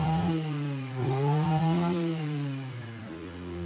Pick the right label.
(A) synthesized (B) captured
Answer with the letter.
A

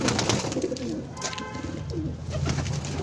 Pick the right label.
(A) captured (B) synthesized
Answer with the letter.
A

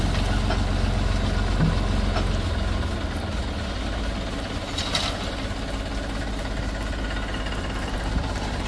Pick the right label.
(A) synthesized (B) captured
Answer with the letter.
B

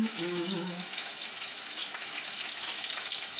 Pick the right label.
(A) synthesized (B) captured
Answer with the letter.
A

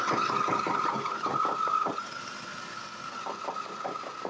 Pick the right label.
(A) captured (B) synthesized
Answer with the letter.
A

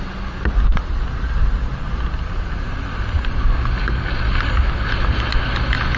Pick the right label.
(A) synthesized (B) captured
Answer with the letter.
B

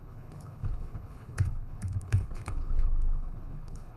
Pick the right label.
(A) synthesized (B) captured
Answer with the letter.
A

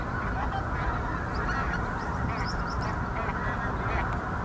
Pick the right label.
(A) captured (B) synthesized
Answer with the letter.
A